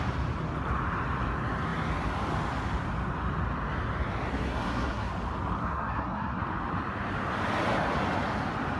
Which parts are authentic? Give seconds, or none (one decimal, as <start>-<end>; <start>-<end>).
0.0-4.3; 5.1-5.6; 6.4-8.8